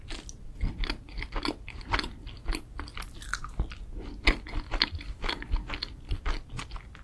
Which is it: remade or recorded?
recorded